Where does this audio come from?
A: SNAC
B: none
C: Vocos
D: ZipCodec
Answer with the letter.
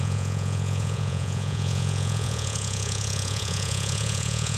C